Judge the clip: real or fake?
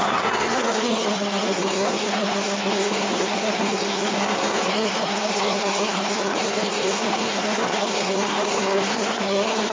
fake